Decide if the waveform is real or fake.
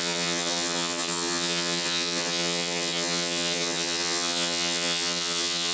fake